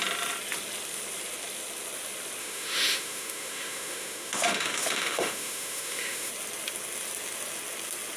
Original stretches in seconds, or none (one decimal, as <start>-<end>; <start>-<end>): 0.0-2.4; 6.3-8.2